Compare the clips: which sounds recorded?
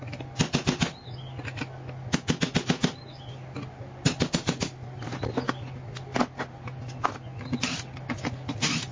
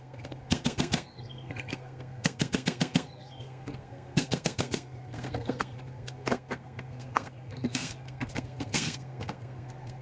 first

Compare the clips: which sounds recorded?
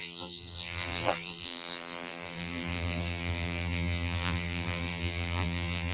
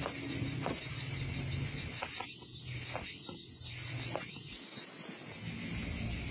second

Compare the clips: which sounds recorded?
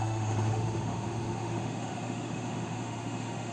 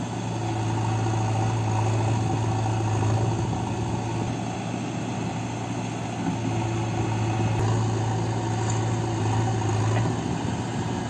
second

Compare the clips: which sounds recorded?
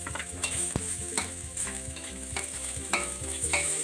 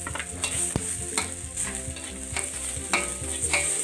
second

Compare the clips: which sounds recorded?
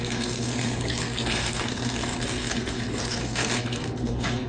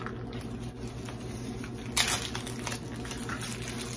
second